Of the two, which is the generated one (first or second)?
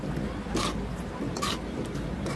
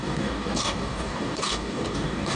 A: second